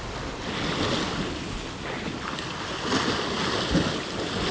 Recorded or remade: recorded